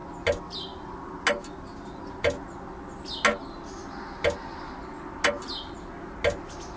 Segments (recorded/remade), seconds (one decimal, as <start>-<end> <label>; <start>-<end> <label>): 0.0-6.8 recorded